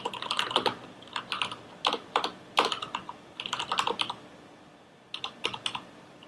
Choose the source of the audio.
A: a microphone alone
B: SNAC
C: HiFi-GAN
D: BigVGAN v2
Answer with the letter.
D